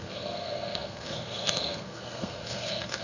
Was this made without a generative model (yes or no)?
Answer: no